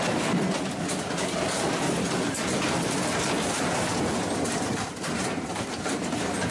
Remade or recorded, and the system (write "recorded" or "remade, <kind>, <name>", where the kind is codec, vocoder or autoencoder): remade, vocoder, BigVGAN v2